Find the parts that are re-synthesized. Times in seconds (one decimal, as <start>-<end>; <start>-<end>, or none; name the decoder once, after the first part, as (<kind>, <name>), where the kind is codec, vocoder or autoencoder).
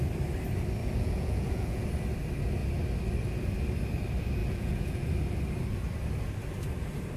0.8-1.9 (vocoder, Vocos); 4.4-5.1